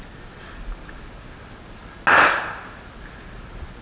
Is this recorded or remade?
recorded